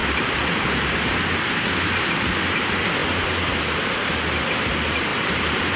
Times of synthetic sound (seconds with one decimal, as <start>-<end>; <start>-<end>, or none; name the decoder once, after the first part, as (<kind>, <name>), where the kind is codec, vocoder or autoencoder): 0.0-1.0 (vocoder, BigVGAN v2); 5.1-5.8